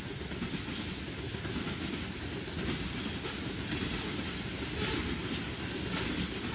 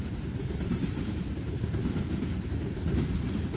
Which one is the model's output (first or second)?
second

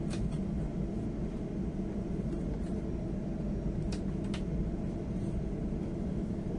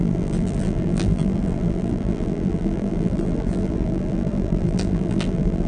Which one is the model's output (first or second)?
second